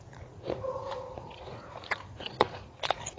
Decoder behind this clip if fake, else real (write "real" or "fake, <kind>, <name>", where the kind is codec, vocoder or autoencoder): fake, vocoder, Vocos